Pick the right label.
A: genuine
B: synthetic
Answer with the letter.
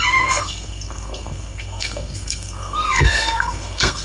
B